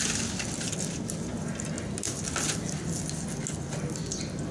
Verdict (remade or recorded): recorded